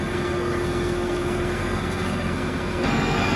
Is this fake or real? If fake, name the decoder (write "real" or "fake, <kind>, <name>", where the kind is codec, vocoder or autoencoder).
fake, codec, SNAC